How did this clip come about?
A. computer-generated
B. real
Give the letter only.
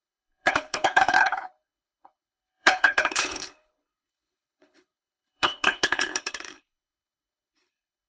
A